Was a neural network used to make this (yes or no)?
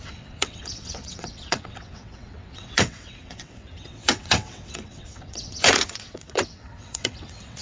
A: yes